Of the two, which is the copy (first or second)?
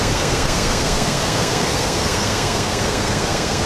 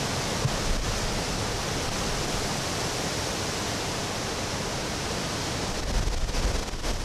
first